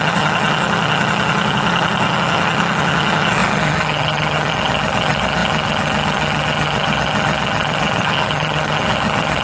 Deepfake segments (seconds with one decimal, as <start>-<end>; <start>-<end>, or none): 0.0-9.4